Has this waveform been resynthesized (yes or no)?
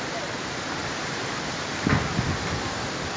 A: no